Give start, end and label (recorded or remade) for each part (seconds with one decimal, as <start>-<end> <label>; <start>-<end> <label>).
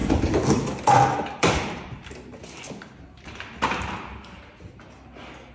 0.0-2.0 remade; 2.0-5.5 recorded